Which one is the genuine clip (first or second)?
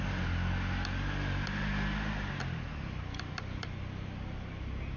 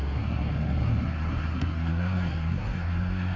first